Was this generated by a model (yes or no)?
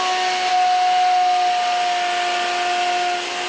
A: no